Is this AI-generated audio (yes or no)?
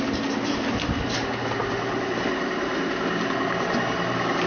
no